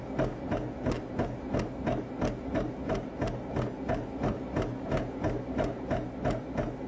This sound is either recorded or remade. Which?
recorded